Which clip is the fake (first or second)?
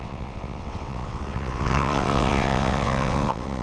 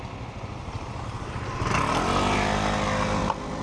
first